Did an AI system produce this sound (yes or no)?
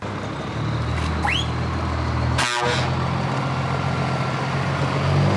no